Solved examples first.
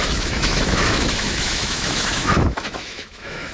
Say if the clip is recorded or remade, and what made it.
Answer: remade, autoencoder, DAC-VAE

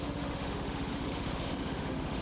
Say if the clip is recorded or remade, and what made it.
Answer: remade, autoencoder, DAC-VAE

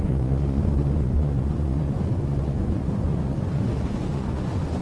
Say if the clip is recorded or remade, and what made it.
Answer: remade, vocoder, Vocos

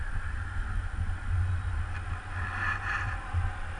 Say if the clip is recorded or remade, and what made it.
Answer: recorded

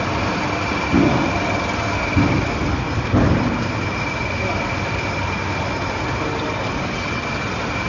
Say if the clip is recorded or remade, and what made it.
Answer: recorded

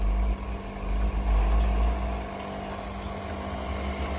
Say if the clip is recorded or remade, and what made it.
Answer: recorded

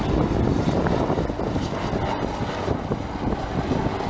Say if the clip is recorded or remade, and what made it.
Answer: recorded